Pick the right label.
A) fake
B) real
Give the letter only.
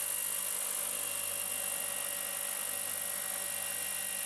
B